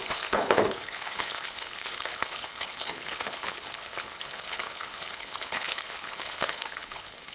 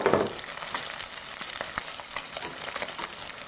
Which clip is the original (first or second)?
second